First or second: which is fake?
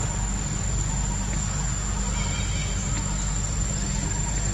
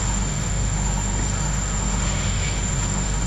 second